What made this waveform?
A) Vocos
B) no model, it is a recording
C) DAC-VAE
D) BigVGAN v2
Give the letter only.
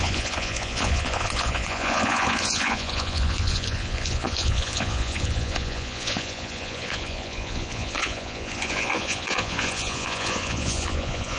A